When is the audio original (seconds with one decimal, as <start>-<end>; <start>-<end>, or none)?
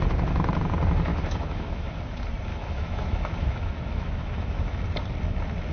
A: 0.0-1.1; 2.0-2.5; 4.8-5.7